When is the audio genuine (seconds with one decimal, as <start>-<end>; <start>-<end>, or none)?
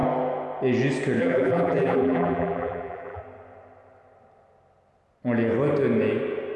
0.0-1.2; 3.2-6.6